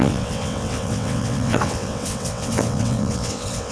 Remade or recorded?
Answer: remade